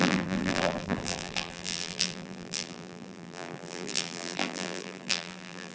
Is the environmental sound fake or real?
fake